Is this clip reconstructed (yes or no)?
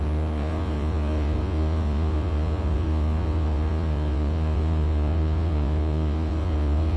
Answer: yes